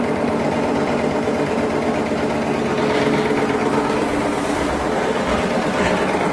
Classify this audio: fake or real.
real